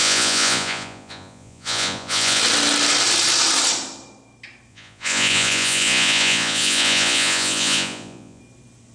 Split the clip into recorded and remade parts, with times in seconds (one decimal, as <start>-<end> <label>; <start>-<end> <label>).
0.0-2.4 remade; 2.4-4.7 recorded; 4.7-8.4 remade; 8.4-8.9 recorded